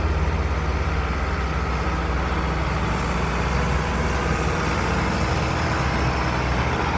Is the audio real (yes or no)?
yes